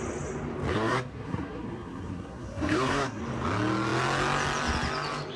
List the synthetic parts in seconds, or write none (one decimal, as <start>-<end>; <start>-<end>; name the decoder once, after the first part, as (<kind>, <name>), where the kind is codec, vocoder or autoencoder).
0.7-3.2 (codec, SNAC)